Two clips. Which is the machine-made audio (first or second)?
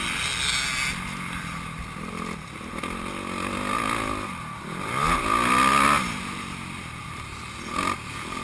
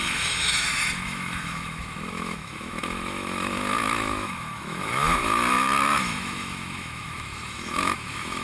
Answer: second